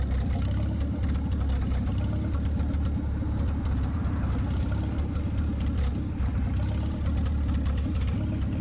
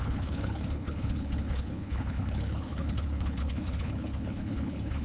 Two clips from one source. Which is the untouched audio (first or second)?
first